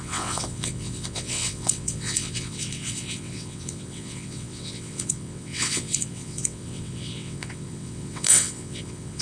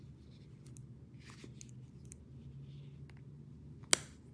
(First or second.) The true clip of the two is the second